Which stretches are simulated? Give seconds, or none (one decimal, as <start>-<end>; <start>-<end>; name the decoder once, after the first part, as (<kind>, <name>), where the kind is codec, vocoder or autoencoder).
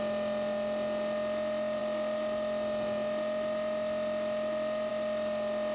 none